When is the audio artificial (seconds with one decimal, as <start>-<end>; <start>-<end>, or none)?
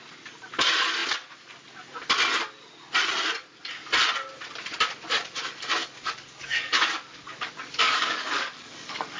5.8-9.2